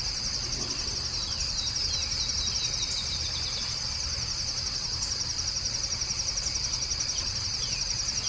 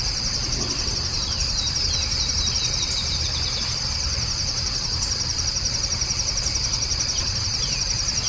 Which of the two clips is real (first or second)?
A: first